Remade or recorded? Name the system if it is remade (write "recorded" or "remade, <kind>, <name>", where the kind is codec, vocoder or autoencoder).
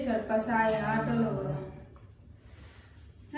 recorded